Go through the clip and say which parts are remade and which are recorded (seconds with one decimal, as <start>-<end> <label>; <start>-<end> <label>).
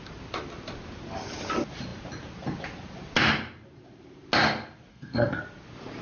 0.0-4.9 recorded; 4.9-5.4 remade; 5.4-6.0 recorded